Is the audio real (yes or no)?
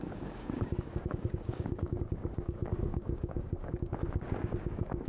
no